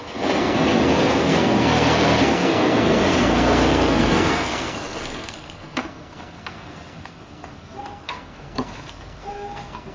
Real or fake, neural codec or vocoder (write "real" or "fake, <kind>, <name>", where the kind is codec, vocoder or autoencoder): fake, codec, SNAC